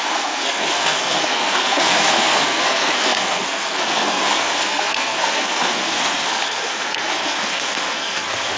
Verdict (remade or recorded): remade